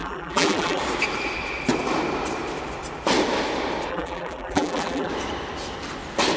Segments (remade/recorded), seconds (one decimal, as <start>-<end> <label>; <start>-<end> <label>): 0.0-0.8 remade; 0.8-3.9 recorded; 3.9-5.1 remade; 5.1-6.4 recorded